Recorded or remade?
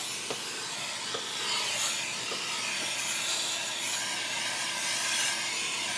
recorded